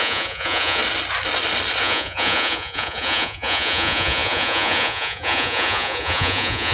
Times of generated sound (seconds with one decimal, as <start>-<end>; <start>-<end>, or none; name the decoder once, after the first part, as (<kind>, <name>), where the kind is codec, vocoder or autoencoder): 0.0-0.8 (vocoder, Vocos); 1.8-6.7